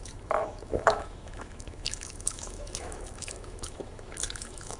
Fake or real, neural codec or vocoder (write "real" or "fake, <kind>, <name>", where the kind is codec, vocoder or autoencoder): fake, autoencoder, DAC-VAE